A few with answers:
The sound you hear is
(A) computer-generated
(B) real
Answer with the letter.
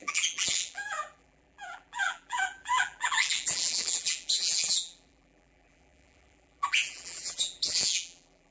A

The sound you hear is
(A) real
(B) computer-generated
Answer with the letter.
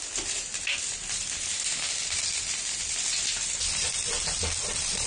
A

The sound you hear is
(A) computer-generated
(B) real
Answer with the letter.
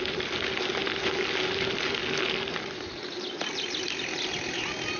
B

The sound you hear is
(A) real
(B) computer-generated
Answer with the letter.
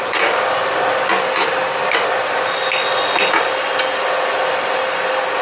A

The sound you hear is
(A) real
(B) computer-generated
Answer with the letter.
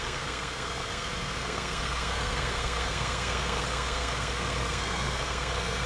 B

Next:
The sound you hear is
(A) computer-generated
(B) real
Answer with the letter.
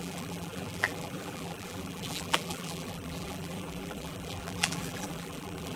A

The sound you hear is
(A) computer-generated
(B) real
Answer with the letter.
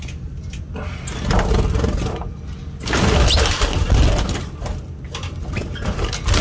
B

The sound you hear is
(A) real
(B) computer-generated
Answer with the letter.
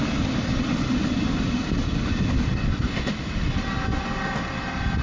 A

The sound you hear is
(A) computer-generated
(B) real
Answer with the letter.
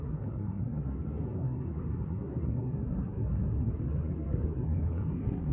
A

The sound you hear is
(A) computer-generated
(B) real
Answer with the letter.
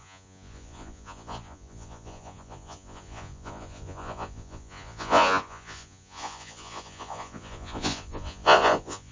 A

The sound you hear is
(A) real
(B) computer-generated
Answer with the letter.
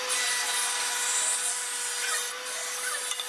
A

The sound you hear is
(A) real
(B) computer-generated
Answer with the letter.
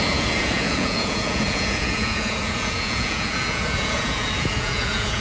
B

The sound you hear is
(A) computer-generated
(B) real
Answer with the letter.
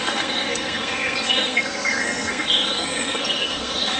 A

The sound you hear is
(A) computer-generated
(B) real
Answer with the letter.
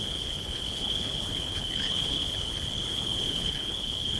A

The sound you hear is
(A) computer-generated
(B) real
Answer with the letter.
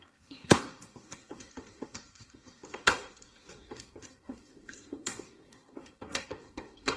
A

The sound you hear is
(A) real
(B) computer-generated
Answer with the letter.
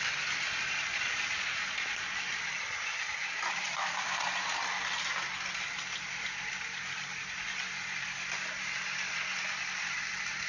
A